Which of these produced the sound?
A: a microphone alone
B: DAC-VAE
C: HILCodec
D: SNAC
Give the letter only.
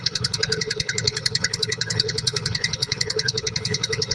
C